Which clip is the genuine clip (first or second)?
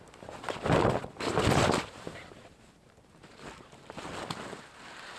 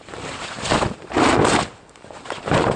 first